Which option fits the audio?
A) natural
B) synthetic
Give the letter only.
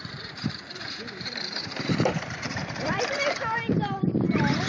B